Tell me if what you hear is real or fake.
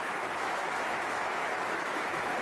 fake